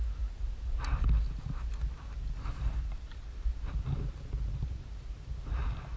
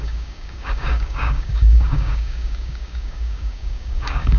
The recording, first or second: first